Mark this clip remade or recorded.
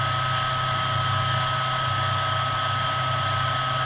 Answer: recorded